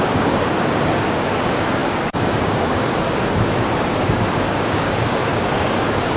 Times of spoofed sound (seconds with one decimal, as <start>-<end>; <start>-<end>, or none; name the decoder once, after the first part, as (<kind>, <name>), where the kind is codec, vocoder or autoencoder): 0.0-6.2 (codec, DAC)